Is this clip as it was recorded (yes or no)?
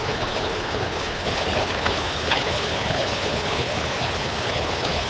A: no